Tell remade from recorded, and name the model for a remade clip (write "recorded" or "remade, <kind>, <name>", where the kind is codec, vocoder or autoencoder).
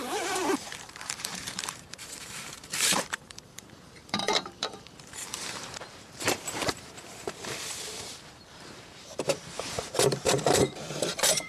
remade, vocoder, BigVGAN v2